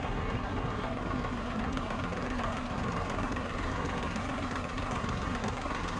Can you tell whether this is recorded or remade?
remade